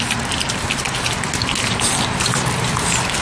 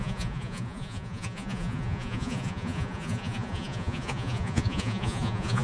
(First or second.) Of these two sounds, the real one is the first